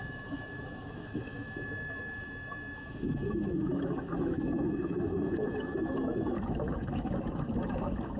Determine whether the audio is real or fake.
fake